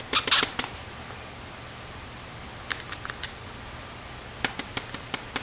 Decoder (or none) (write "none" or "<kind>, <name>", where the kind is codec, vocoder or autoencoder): none